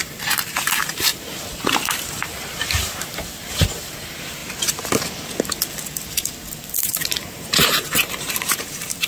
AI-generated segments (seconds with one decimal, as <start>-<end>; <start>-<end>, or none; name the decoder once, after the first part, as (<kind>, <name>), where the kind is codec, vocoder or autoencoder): 0.0-4.4 (vocoder, BigVGAN v2); 6.8-9.1